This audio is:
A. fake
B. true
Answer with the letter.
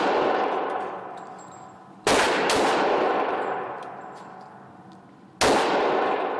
B